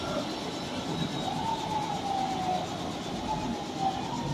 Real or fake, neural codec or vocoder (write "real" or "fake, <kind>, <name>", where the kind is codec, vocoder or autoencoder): real